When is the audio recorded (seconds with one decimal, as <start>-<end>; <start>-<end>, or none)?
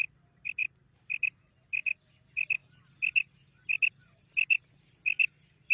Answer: 0.0-5.7